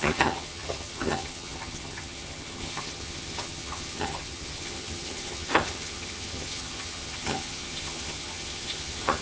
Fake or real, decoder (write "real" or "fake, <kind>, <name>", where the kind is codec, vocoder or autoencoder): fake, vocoder, HiFi-GAN